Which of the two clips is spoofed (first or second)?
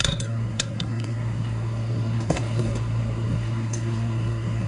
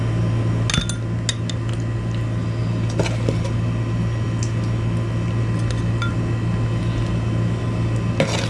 first